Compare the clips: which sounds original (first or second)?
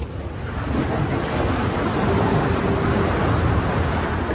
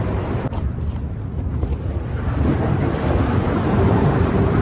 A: first